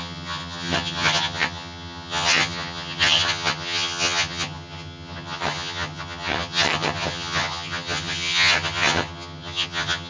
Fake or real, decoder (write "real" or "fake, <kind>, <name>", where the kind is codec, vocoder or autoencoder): fake, vocoder, HiFi-GAN